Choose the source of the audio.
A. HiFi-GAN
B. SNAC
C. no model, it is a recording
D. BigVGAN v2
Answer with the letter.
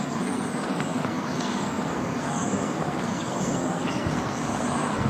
B